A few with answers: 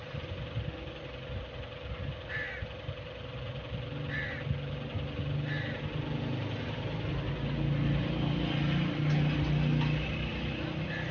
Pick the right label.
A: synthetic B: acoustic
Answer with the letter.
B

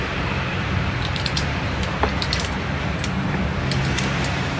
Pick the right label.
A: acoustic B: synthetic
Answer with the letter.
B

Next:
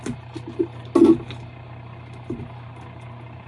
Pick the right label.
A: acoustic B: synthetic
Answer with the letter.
A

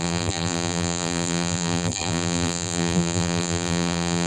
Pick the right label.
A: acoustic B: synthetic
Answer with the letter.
B